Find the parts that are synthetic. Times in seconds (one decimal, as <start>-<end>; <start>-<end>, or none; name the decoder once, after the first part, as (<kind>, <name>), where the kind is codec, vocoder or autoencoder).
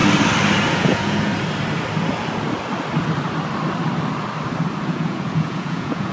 0.7-1.3 (vocoder, Vocos); 4.8-6.1